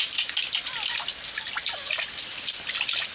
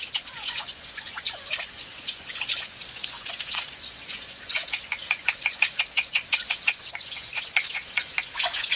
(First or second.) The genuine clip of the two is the first